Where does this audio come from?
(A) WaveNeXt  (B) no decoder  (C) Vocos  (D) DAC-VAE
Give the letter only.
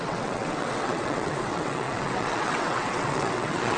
A